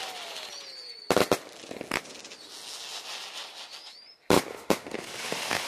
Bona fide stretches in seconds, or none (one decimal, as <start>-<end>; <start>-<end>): 0.0-4.5